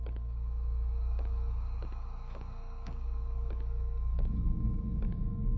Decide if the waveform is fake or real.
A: fake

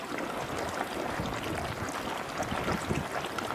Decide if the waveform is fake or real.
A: real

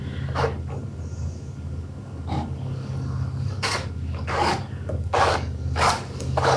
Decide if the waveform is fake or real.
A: fake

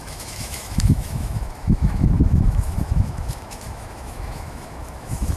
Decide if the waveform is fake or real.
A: fake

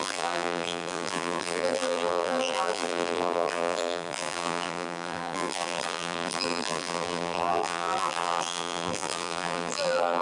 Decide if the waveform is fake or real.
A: fake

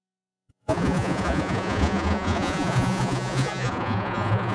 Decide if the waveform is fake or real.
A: fake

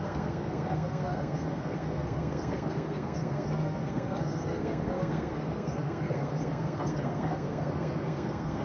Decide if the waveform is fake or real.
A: fake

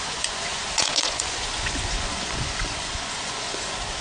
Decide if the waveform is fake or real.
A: fake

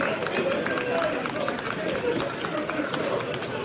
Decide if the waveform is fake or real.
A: real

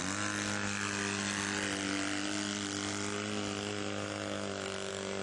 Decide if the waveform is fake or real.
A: real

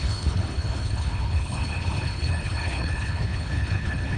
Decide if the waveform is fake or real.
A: fake